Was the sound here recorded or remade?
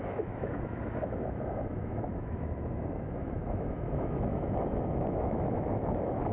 remade